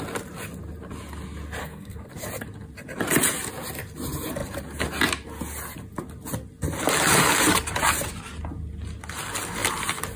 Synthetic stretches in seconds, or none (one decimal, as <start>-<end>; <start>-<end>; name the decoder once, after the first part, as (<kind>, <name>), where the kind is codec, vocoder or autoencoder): 1.6-2.1 (codec, SNAC)